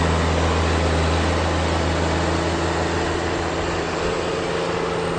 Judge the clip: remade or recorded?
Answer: recorded